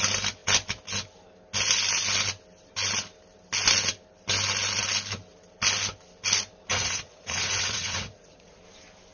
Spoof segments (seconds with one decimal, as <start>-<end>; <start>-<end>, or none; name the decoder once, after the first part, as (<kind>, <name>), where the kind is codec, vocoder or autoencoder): 6.7-8.6 (vocoder, Vocos)